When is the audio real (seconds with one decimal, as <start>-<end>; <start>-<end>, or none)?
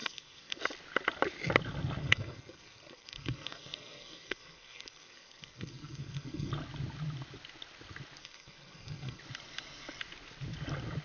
0.6-2.0; 6.5-8.2; 9.2-11.0